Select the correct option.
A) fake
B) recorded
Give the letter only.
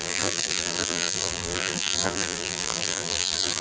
A